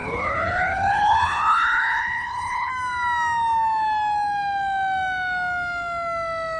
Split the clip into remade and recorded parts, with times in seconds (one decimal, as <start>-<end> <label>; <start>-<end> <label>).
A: 0.0-2.7 remade; 2.7-6.6 recorded